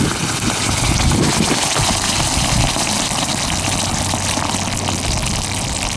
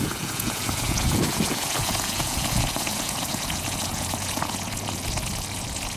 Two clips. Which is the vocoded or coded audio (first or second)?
second